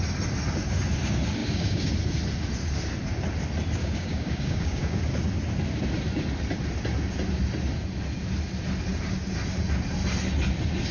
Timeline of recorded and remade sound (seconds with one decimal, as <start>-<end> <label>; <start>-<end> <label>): 0.0-1.4 recorded; 1.4-1.9 remade; 1.9-3.8 recorded; 3.8-5.0 remade; 5.0-10.9 recorded